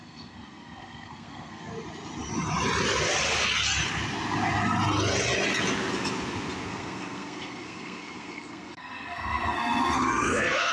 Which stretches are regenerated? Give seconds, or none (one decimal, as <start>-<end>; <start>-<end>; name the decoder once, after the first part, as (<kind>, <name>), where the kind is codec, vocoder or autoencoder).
0.0-1.7 (codec, SNAC); 6.7-10.7